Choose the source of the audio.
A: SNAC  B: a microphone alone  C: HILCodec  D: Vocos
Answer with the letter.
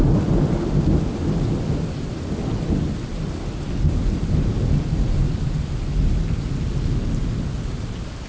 B